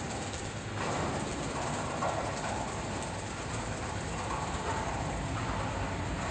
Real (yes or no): yes